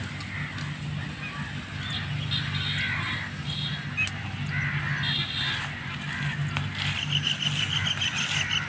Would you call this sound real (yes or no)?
yes